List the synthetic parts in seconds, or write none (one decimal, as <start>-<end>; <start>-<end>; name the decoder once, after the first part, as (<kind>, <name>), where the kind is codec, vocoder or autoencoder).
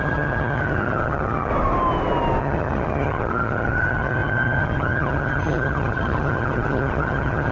0.0-1.5 (vocoder, HiFi-GAN); 2.4-7.5